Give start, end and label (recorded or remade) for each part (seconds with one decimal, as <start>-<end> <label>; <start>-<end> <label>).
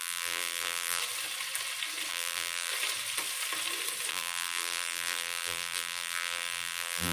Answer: 0.0-1.0 remade; 1.0-2.1 recorded; 2.1-2.7 remade; 2.7-4.1 recorded; 4.1-7.1 remade